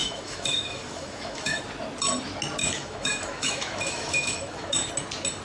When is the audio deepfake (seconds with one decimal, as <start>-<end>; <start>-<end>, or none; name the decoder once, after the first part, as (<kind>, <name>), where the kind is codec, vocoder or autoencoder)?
0.0-1.6 (autoencoder, DAC-VAE); 2.6-4.9